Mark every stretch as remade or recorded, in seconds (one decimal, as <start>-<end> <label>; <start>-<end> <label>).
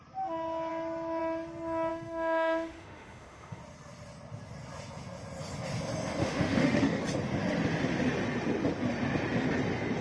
0.0-1.9 recorded; 1.9-3.6 remade; 3.6-6.2 recorded; 6.2-7.0 remade; 7.0-10.0 recorded